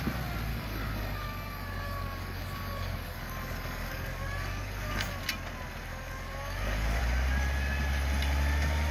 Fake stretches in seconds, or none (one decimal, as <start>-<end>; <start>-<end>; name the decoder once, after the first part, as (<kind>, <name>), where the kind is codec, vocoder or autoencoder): 0.5-5.2 (codec, DAC); 5.9-7.0